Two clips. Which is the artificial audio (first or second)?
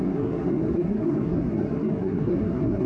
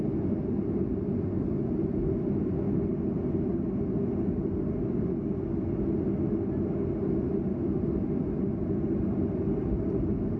first